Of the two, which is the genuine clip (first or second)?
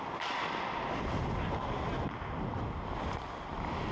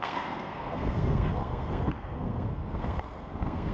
first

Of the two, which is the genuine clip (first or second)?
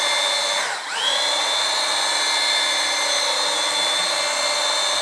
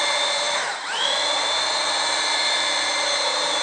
first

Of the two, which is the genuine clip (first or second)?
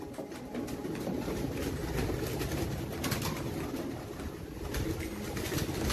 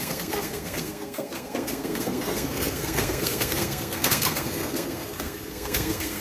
first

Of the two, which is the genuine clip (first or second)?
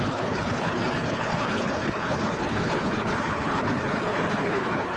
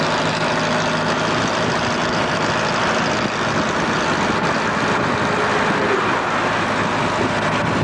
second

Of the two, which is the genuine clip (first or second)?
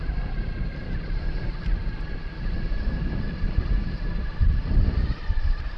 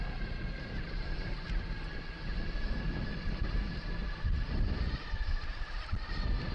second